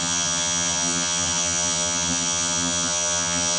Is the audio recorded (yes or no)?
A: no